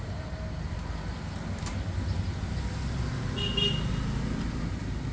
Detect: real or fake real